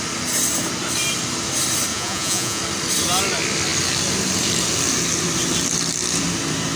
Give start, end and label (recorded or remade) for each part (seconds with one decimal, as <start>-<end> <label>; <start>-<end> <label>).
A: 0.0-1.9 recorded; 1.9-2.6 remade; 2.6-6.8 recorded

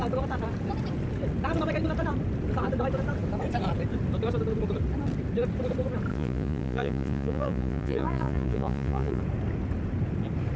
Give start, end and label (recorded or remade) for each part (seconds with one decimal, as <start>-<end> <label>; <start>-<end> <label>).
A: 0.0-6.1 recorded; 6.1-9.2 remade; 9.2-10.6 recorded

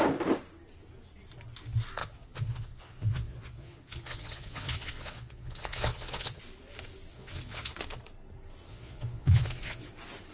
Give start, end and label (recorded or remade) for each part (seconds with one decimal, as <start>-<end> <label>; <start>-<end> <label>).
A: 0.0-2.0 recorded; 2.0-6.4 remade; 6.4-7.1 recorded; 7.1-7.7 remade; 7.7-8.7 recorded; 8.7-9.9 remade; 9.9-10.3 recorded